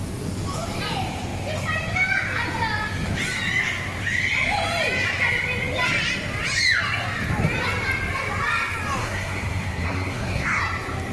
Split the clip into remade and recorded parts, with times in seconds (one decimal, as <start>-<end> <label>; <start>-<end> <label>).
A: 0.0-9.0 recorded; 9.0-10.6 remade; 10.6-11.1 recorded